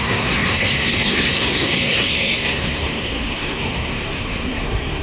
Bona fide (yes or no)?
no